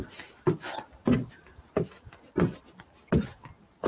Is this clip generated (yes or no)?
no